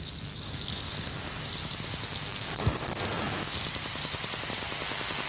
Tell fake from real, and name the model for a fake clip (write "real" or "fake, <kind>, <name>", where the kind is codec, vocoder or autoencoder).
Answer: real